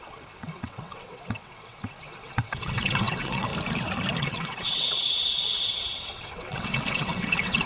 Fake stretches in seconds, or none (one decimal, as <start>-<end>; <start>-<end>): 0.0-3.5; 4.2-7.7